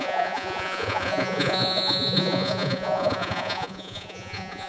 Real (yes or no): no